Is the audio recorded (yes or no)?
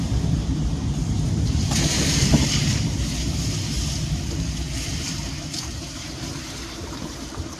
no